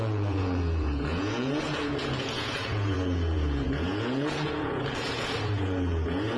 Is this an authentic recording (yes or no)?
no